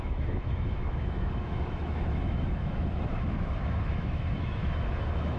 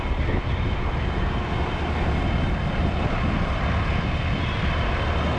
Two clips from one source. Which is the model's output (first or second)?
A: first